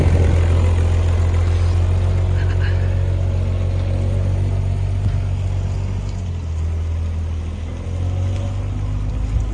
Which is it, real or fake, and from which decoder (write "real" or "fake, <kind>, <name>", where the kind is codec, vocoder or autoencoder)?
real